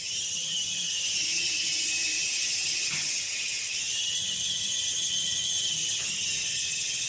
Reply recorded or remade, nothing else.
remade